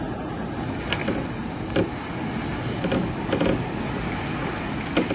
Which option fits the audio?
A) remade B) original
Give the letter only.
B